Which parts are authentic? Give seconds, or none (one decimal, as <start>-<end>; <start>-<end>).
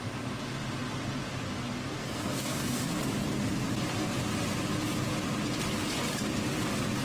0.0-2.0; 3.0-7.0